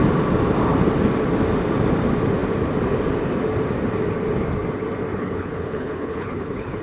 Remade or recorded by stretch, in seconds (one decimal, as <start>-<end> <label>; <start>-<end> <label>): 0.0-5.1 recorded; 5.1-6.8 remade